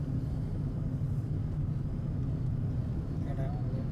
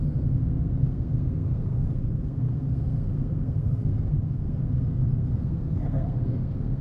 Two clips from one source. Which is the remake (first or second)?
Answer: second